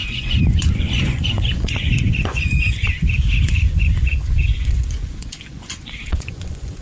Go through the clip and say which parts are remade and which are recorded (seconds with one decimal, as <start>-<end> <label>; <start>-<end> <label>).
0.0-6.8 remade